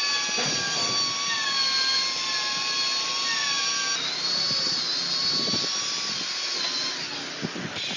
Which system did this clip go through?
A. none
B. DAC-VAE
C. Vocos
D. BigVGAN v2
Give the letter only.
A